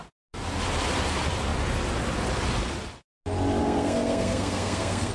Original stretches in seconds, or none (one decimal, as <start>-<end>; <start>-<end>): 0.0-3.6